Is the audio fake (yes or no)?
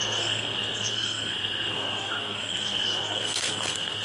yes